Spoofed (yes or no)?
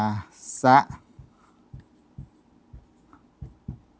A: no